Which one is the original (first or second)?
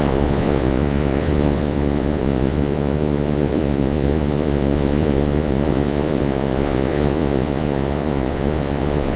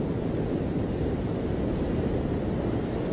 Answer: second